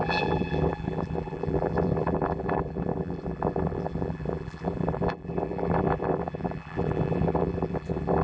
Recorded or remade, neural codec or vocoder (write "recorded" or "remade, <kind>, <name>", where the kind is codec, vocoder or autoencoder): remade, vocoder, BigVGAN v2